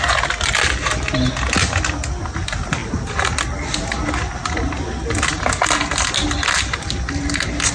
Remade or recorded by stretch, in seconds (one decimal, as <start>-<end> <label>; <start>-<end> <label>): 0.0-7.7 recorded